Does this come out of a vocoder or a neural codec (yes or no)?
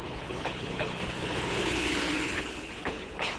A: yes